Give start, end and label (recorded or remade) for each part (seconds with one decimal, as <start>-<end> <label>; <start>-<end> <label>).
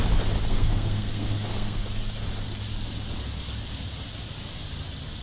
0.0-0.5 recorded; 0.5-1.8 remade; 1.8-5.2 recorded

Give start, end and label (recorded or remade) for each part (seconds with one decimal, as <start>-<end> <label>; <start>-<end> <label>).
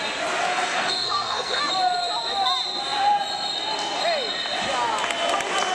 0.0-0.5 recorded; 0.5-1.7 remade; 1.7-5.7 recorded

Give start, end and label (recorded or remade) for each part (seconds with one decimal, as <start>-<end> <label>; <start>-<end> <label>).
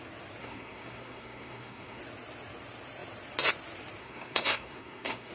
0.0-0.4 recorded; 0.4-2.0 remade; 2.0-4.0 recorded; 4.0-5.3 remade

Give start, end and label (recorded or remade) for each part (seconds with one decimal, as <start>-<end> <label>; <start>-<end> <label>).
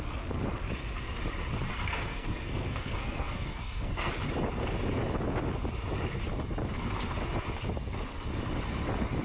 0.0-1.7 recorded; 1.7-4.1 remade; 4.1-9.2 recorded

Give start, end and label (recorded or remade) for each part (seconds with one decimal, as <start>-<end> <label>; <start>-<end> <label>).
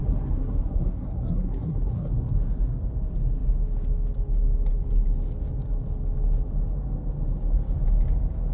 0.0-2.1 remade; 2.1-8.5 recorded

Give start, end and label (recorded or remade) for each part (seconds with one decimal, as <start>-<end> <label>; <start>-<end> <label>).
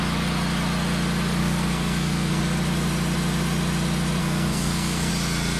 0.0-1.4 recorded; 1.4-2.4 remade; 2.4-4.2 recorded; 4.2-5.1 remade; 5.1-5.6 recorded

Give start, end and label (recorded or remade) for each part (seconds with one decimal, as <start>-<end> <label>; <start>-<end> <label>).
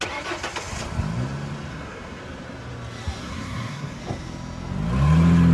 0.0-1.7 recorded; 1.7-2.2 remade; 2.2-3.2 recorded; 3.2-4.0 remade; 4.0-5.5 recorded